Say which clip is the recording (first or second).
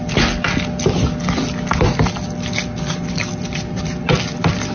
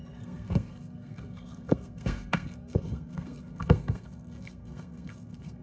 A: first